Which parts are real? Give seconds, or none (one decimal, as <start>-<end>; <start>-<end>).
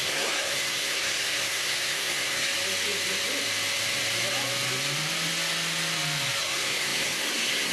2.5-6.4